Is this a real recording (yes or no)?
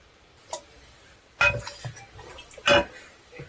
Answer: yes